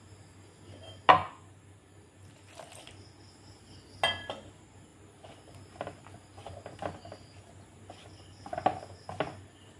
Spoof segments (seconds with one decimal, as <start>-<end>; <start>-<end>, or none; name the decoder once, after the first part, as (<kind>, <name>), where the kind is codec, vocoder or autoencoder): 1.2-2.8 (vocoder, BigVGAN v2)